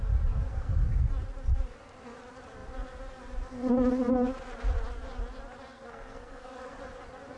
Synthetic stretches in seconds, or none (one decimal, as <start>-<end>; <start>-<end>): 0.5-1.1; 5.7-6.8